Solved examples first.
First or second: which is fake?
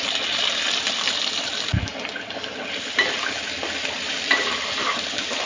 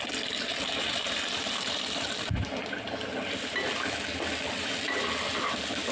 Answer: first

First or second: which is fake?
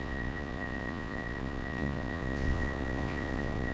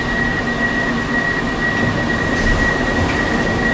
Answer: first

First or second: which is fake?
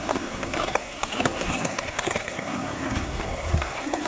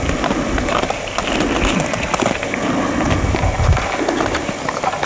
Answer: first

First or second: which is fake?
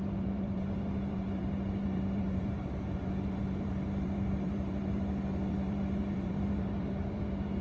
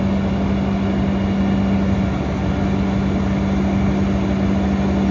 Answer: first